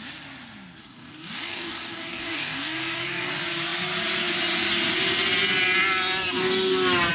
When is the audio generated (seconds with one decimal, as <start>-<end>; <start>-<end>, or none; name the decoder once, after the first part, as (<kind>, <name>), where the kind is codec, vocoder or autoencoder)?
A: 0.8-3.3 (codec, DAC)